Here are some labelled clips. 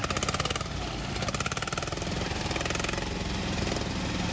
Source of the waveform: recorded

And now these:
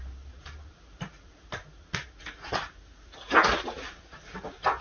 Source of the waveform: recorded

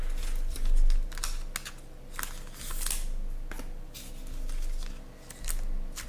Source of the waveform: recorded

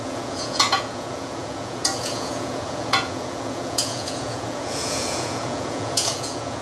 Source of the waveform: remade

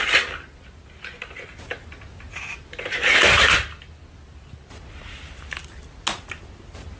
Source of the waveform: recorded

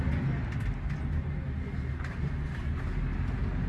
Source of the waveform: recorded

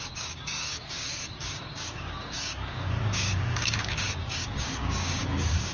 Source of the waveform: remade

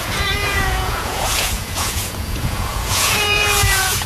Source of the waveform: remade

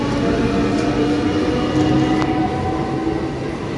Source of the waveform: recorded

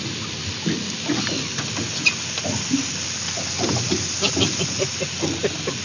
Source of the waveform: recorded